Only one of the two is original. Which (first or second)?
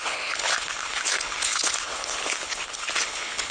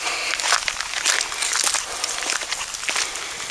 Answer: second